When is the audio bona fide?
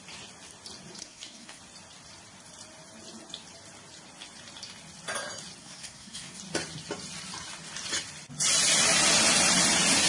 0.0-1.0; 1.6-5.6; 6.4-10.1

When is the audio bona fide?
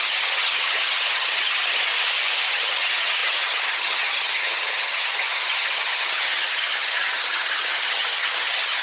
1.9-2.5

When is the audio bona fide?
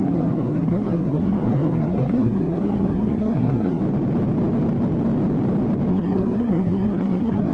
3.8-5.9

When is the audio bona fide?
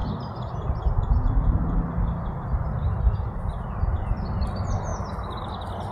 0.0-5.9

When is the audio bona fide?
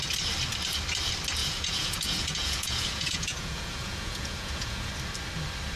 0.0-1.4; 4.9-5.8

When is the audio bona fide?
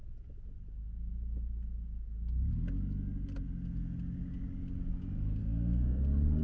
0.0-5.4; 6.0-6.4